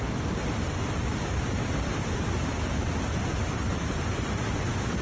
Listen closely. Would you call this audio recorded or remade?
recorded